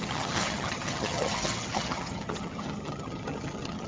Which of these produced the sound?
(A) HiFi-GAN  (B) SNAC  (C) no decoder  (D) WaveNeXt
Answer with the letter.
A